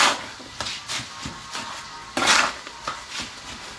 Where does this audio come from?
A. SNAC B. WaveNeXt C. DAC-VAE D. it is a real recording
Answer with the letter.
D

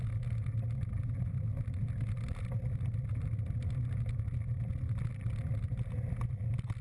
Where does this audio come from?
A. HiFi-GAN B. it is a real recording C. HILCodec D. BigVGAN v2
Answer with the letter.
B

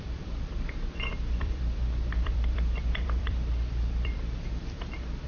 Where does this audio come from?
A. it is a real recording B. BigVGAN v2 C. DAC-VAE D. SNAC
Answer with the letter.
B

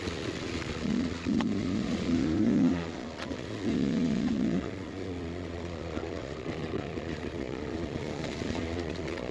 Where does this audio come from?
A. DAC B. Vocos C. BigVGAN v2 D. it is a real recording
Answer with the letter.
B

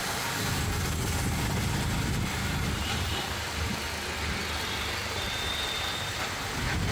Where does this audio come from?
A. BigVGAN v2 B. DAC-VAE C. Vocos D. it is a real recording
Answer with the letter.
A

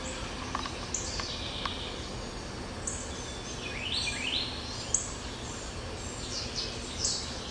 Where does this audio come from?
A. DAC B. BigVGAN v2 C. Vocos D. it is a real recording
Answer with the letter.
D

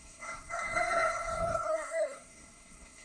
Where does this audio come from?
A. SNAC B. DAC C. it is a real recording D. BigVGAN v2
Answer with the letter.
A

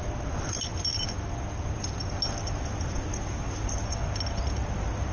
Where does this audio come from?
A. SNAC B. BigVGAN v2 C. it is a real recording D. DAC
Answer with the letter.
C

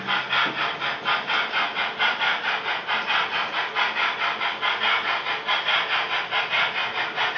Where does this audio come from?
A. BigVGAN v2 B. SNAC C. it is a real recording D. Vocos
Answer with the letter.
C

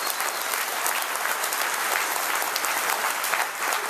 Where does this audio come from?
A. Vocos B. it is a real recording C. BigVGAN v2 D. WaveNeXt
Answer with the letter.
C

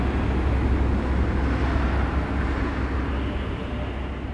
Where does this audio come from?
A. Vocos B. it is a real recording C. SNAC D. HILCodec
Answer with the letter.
B